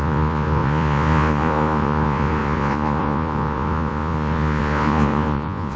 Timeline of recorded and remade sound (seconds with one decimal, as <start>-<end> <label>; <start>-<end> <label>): 0.0-5.8 remade